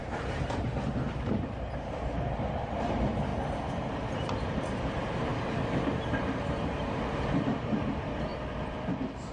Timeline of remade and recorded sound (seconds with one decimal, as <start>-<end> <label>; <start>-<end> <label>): 0.0-3.3 remade; 3.3-3.9 recorded; 3.9-5.3 remade; 5.3-5.9 recorded; 5.9-9.3 remade